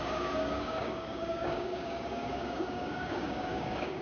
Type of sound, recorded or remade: remade